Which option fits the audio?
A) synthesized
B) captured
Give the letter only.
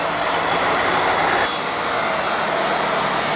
B